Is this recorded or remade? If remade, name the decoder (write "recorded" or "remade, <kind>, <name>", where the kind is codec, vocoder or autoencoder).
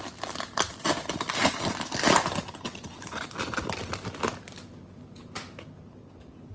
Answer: recorded